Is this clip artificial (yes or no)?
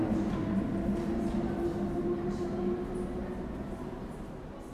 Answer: no